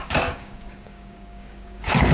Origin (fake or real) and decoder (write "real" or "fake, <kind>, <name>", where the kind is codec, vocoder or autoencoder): fake, codec, DAC